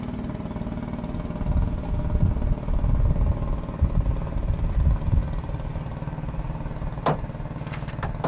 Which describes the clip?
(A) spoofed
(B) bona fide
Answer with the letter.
B